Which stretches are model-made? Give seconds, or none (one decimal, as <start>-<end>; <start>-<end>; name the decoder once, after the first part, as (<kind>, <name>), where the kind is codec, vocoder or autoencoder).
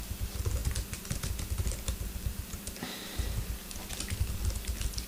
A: 0.0-3.9 (vocoder, BigVGAN v2)